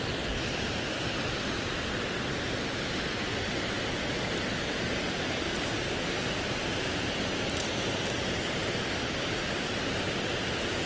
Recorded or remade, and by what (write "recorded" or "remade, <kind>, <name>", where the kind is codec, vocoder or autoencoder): recorded